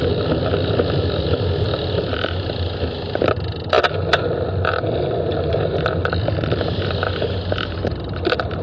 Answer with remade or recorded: recorded